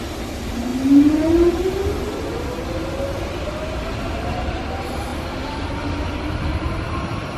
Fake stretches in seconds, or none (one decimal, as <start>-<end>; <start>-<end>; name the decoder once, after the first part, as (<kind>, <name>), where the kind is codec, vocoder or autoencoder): none